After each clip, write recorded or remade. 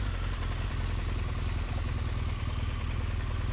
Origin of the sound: recorded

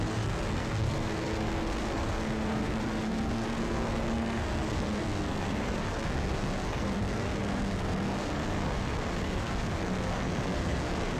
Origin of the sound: remade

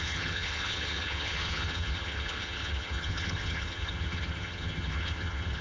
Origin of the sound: remade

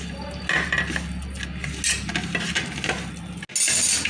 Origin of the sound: recorded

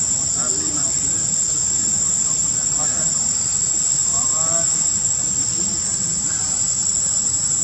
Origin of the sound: recorded